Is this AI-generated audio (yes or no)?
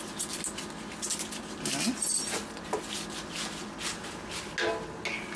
no